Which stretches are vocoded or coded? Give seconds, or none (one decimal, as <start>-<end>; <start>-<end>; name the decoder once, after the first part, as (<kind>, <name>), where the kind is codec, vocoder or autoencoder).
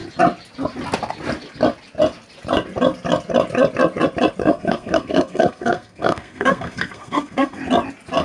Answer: 4.4-7.6 (codec, SNAC)